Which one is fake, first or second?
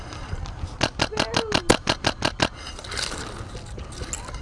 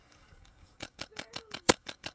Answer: second